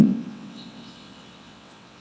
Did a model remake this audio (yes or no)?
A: yes